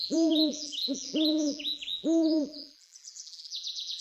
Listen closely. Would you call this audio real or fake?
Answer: fake